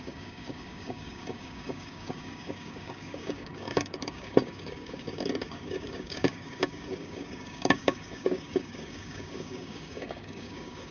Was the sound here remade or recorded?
remade